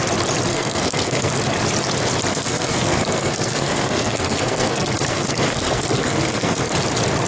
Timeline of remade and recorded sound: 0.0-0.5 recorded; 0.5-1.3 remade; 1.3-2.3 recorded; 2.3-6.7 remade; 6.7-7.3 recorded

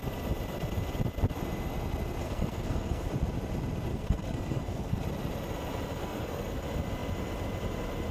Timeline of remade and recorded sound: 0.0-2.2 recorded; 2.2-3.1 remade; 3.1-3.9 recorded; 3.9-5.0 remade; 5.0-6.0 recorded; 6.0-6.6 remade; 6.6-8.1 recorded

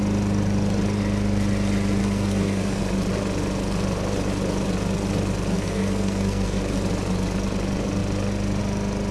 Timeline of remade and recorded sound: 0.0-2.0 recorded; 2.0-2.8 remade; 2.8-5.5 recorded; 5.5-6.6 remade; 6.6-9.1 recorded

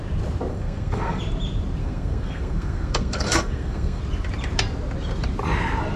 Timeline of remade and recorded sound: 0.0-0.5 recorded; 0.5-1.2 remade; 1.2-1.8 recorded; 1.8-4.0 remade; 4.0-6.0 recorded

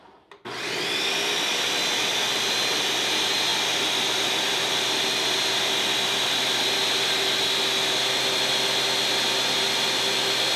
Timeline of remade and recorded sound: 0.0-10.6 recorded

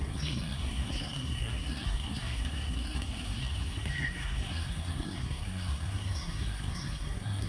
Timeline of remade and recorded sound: 0.0-7.5 remade

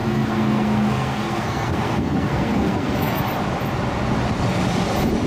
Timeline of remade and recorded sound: 0.0-3.2 remade; 3.2-5.3 recorded